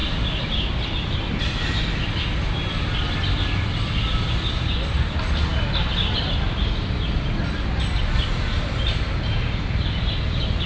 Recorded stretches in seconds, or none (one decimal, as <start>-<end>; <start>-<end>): 0.0-10.7

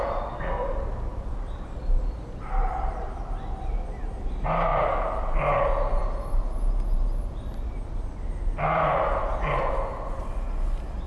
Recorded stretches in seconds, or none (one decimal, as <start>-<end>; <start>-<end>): 0.0-11.1

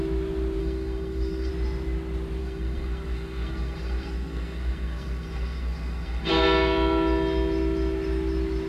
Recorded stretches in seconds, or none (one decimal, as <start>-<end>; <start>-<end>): 0.0-0.6; 1.5-2.4; 6.3-8.7

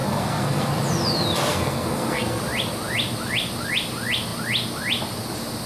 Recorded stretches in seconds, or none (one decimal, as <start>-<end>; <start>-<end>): 0.7-1.5; 2.4-5.7

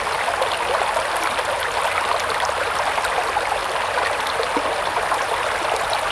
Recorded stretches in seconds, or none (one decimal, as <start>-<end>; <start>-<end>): 0.0-6.1

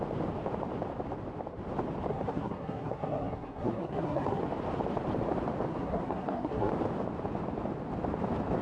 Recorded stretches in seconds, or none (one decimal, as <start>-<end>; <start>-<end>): 0.0-2.1; 4.4-5.7; 6.7-8.6